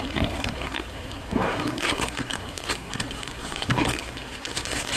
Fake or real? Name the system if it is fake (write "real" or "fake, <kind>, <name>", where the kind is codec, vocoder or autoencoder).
fake, codec, SNAC